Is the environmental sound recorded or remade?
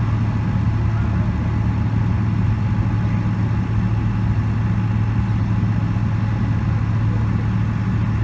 recorded